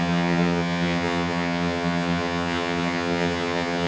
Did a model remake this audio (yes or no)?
yes